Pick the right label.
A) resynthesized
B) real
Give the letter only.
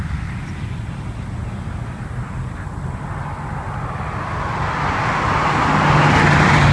B